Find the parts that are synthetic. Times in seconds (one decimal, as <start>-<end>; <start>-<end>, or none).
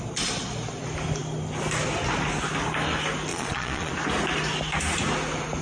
3.3-3.9